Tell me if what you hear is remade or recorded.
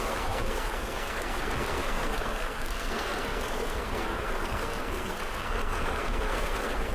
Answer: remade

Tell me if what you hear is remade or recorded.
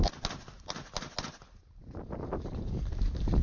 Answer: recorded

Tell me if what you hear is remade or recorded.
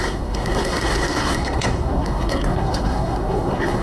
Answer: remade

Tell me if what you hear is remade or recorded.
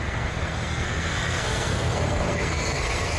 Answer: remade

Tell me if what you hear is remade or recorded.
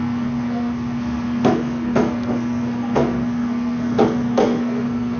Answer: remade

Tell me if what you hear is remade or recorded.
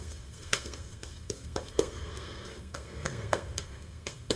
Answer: remade